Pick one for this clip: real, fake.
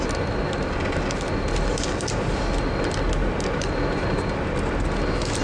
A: real